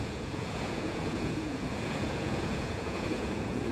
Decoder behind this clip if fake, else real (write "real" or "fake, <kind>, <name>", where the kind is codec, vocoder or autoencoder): fake, vocoder, Vocos